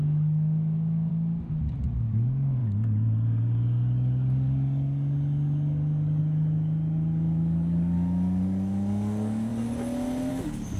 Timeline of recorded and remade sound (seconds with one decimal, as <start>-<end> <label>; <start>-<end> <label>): 0.0-1.1 remade; 1.1-1.9 recorded; 1.9-9.5 remade; 9.5-10.3 recorded; 10.3-10.8 remade